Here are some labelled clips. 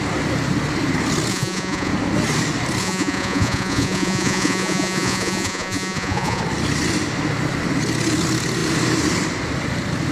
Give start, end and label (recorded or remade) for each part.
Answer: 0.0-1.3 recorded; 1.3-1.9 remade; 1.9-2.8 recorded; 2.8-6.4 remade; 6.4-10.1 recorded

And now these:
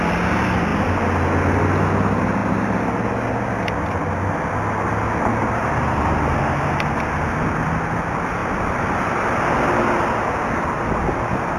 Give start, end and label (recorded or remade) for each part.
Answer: 0.0-11.6 recorded

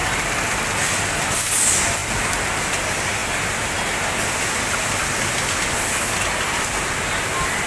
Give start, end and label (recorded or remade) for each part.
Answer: 0.0-2.0 recorded; 2.0-2.7 remade; 2.7-7.7 recorded

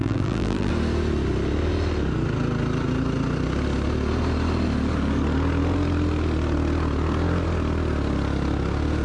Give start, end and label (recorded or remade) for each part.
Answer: 0.0-0.7 remade; 0.7-9.0 recorded

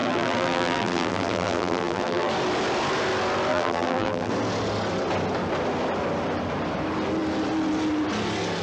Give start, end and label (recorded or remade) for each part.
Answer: 0.0-2.3 remade; 2.3-3.5 recorded; 3.5-4.3 remade; 4.3-8.6 recorded

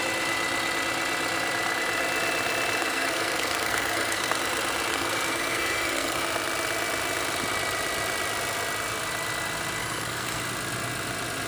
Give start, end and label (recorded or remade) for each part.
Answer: 0.0-2.8 recorded; 2.8-4.4 remade; 4.4-4.9 recorded; 4.9-6.2 remade; 6.2-9.8 recorded; 9.8-10.4 remade; 10.4-11.5 recorded

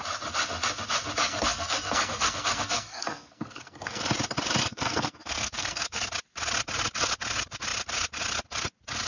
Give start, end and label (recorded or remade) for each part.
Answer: 0.0-1.2 recorded; 1.2-4.0 remade; 4.0-4.6 recorded; 4.6-6.1 remade; 6.1-9.1 recorded

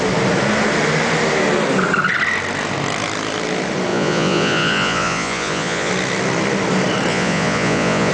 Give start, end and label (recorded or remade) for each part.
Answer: 0.0-3.9 recorded; 3.9-5.9 remade; 5.9-7.1 recorded; 7.1-8.1 remade